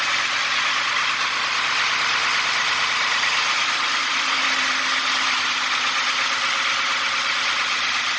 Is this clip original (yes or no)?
yes